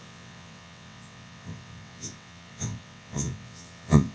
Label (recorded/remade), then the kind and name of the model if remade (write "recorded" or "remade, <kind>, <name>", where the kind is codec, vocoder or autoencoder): remade, vocoder, WaveNeXt